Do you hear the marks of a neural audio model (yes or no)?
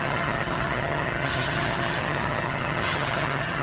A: yes